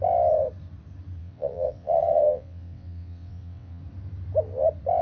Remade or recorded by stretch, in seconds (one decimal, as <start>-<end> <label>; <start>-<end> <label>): 0.0-1.2 recorded; 1.2-3.8 remade; 3.8-5.0 recorded